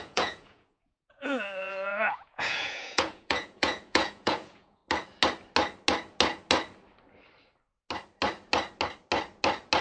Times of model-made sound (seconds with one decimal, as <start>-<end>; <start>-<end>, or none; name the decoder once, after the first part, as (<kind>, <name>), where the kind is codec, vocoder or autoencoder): 0.0-4.8 (vocoder, Vocos)